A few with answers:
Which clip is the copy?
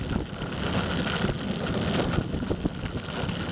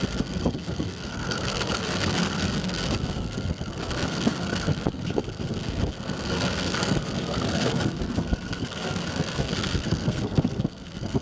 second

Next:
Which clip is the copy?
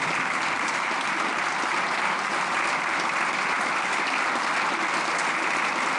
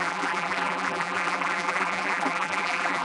second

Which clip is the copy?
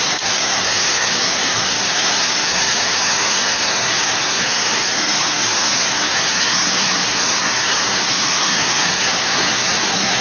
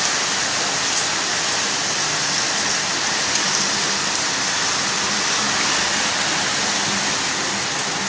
first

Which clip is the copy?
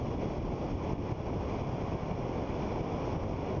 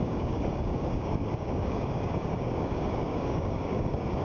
second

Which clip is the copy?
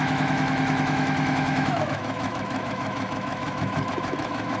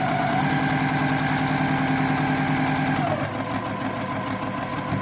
first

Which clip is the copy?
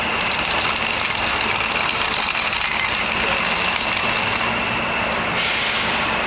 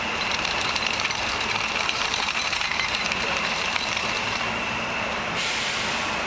second